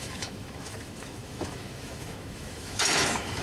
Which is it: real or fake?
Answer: fake